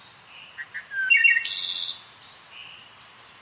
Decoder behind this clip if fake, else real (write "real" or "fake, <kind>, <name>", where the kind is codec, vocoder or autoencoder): real